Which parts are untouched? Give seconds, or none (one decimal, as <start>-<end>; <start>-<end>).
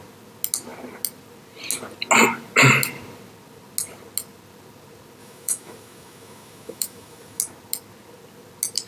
0.0-5.2; 7.4-8.9